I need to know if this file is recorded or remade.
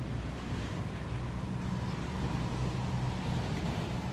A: recorded